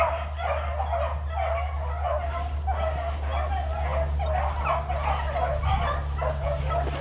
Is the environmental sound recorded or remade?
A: recorded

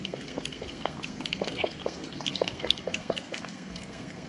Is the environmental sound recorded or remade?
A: remade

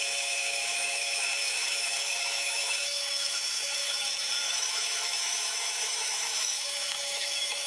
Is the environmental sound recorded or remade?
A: remade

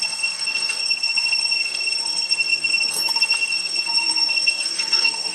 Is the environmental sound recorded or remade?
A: remade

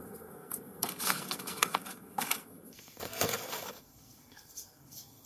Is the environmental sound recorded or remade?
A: remade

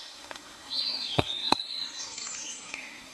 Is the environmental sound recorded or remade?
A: remade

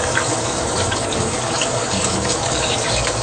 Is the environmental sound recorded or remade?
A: remade